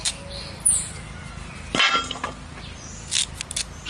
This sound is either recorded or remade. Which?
recorded